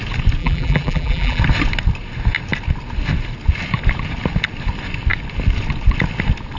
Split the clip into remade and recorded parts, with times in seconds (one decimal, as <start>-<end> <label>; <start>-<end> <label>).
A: 0.0-0.4 recorded; 0.4-1.4 remade; 1.4-6.6 recorded